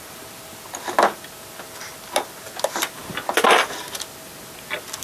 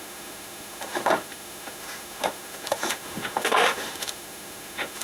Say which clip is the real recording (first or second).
first